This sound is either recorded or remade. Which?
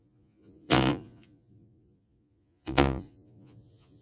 remade